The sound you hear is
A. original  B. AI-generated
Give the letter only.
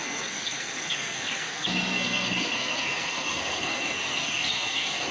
B